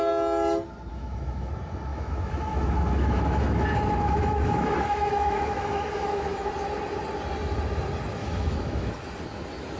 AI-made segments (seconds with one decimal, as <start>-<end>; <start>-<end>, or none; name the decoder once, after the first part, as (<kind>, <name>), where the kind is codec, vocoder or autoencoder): 0.9-1.5 (autoencoder, DAC-VAE); 1.9-6.5; 8.2-8.9